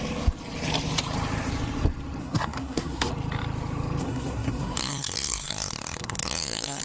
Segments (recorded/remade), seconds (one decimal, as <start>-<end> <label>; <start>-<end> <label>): 0.0-2.2 recorded; 2.2-3.1 remade; 3.1-4.0 recorded; 4.0-6.8 remade